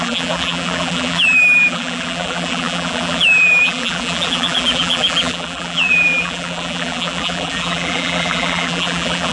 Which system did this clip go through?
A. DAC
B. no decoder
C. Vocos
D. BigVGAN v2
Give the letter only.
D